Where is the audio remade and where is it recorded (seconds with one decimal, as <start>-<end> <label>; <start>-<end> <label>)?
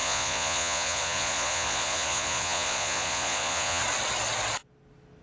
0.0-3.8 remade; 3.8-5.2 recorded